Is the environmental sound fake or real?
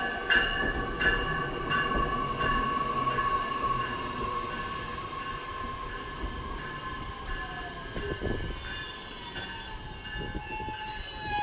real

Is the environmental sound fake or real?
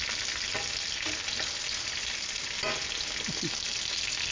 real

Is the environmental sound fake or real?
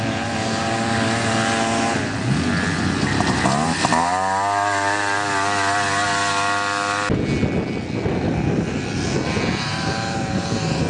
real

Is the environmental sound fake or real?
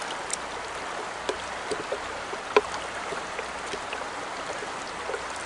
real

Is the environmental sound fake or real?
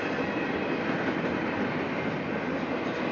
real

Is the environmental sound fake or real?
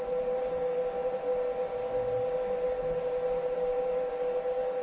real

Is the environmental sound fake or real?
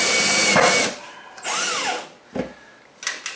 real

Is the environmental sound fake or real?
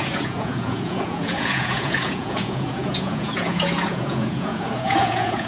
fake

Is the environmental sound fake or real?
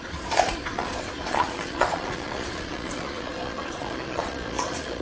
fake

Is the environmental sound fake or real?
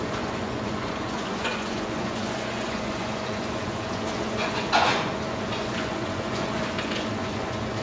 fake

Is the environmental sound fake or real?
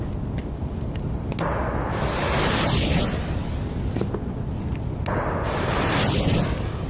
real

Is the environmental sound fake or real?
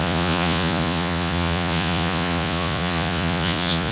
fake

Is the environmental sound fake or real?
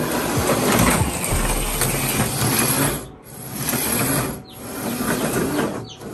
real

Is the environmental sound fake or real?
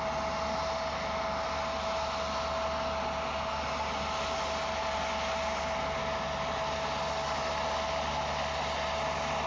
real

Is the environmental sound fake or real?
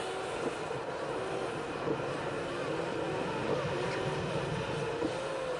real